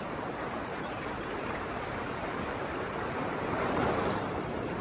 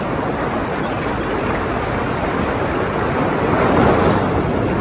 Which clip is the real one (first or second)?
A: second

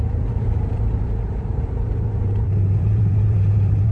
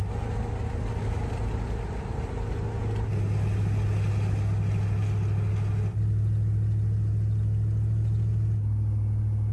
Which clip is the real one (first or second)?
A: second